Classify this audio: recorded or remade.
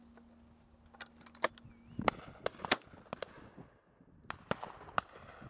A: recorded